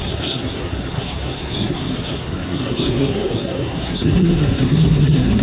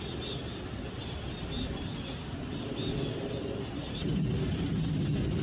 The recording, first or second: second